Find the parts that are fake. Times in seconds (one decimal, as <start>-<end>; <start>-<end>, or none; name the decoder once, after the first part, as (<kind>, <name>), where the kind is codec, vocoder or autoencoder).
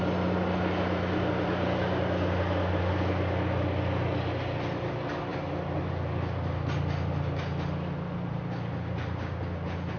none